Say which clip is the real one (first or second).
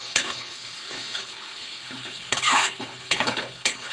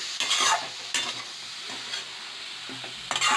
second